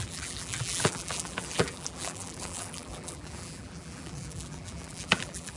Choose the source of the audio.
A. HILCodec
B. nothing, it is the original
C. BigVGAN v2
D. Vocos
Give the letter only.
C